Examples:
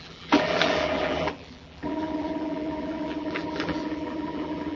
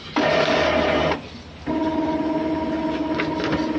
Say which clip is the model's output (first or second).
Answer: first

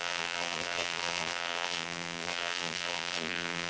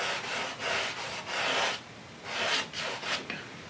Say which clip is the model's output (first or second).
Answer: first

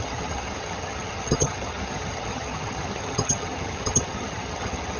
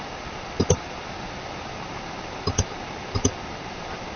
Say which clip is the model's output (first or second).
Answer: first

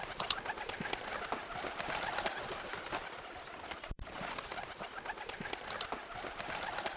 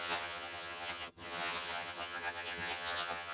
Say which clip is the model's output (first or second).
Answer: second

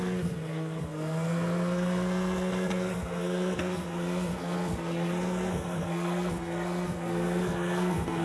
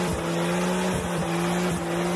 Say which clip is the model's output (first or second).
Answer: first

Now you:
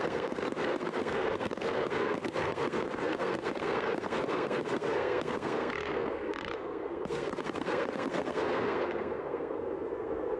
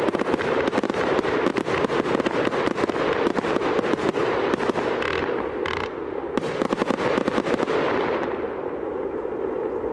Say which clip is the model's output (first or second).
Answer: first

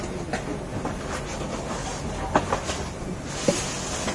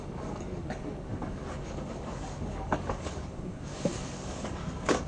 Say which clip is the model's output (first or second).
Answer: second